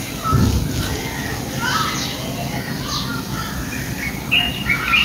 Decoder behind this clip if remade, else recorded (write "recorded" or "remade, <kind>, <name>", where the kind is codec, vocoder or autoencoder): recorded